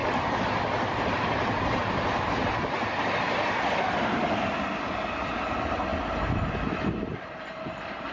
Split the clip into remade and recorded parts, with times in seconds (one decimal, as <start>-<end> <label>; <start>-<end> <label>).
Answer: 0.0-8.1 recorded